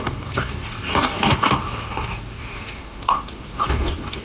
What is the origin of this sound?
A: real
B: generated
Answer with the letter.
B